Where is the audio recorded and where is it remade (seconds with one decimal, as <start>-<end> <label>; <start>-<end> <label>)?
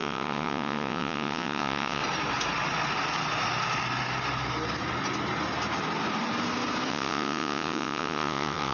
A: 0.0-2.0 remade; 2.0-6.9 recorded; 6.9-8.7 remade